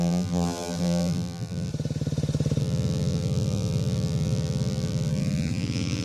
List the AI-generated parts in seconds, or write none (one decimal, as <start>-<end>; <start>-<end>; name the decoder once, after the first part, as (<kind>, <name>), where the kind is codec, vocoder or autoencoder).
0.0-1.7 (vocoder, BigVGAN v2); 2.6-6.0